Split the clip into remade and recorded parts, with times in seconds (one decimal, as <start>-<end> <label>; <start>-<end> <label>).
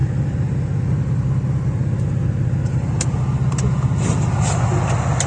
0.0-5.3 recorded